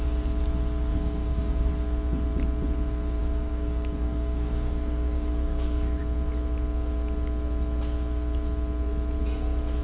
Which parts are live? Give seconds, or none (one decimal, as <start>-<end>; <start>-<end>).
0.0-0.9; 1.7-3.2; 6.0-9.8